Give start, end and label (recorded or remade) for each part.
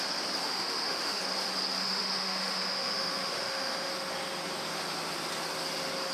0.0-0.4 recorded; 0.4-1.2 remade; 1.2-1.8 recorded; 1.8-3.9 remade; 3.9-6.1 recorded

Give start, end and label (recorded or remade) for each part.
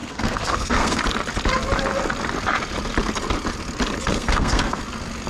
0.0-1.0 remade; 1.0-4.1 recorded; 4.1-4.8 remade; 4.8-5.3 recorded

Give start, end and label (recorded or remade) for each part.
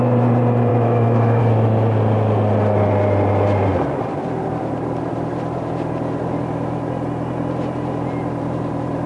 0.0-0.7 recorded; 0.7-1.4 remade; 1.4-9.1 recorded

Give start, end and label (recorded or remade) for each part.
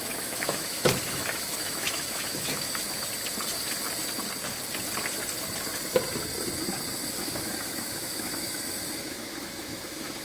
0.0-3.1 remade; 3.1-7.1 recorded; 7.1-10.2 remade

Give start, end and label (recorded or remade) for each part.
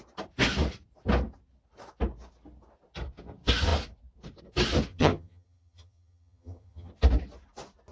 0.0-4.9 recorded; 4.9-6.9 remade; 6.9-7.9 recorded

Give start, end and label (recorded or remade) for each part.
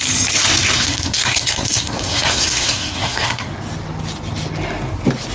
0.0-0.8 recorded; 0.8-3.5 remade; 3.5-5.3 recorded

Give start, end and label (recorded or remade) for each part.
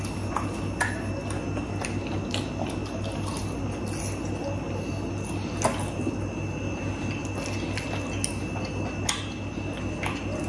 0.0-10.5 recorded